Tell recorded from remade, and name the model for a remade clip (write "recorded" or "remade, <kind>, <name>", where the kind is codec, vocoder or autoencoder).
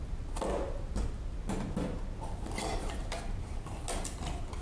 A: recorded